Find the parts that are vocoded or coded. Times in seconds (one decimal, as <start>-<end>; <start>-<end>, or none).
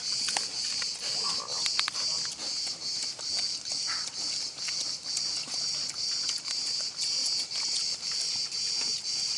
none